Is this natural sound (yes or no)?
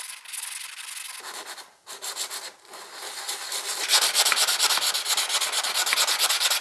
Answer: yes